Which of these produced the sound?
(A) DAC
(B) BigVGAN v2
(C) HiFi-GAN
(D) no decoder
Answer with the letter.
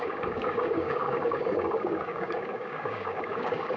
A